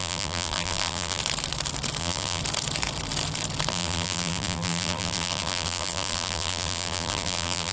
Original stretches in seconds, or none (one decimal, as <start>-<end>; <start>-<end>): 1.2-2.0; 2.4-3.7